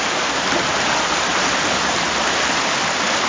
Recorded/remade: recorded